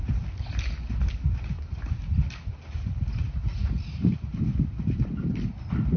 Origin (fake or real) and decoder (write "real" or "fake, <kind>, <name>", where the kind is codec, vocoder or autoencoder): real